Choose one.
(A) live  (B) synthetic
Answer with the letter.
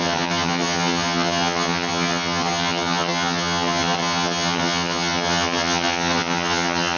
B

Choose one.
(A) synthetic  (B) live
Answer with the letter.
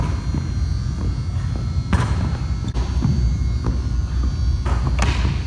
B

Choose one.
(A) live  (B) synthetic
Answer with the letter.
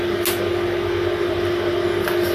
A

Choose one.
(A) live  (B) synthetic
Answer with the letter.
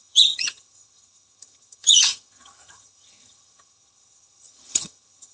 B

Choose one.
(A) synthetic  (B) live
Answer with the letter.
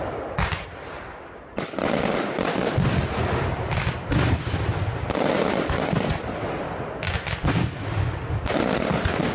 B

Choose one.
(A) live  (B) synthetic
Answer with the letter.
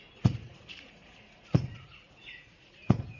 B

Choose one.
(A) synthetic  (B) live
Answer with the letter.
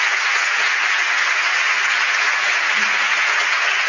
A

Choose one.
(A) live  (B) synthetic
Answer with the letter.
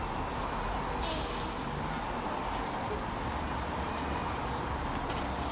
A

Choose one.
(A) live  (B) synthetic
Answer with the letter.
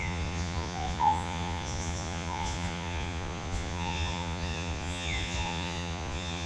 B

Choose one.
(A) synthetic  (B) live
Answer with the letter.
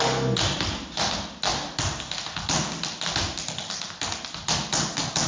B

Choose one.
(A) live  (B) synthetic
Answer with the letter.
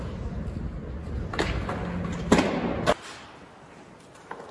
A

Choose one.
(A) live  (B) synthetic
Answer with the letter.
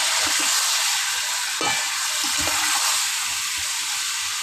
B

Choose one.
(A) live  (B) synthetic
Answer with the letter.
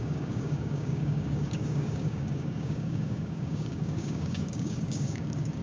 B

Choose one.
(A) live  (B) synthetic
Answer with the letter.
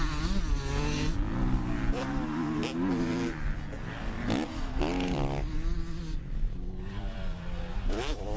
A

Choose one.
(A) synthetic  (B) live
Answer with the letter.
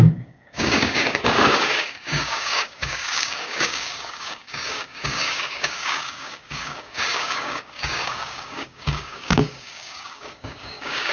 A